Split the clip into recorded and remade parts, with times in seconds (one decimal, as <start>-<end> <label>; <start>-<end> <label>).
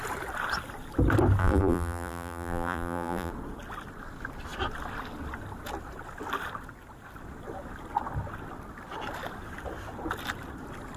0.0-1.4 recorded; 1.4-3.3 remade; 3.3-11.0 recorded